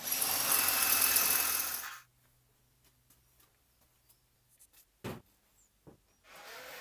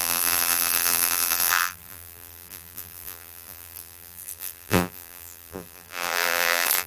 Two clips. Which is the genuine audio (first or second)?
first